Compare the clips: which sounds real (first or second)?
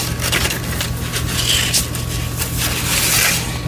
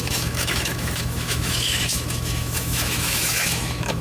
first